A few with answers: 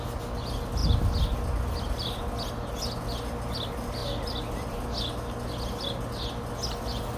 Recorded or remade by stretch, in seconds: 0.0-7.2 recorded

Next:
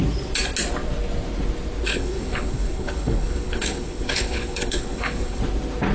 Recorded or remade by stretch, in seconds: 0.0-1.9 recorded; 1.9-5.4 remade; 5.4-5.9 recorded

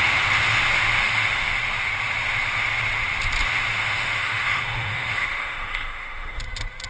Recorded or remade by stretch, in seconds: 0.0-1.0 recorded; 1.0-1.6 remade; 1.6-3.8 recorded; 3.8-6.4 remade; 6.4-6.9 recorded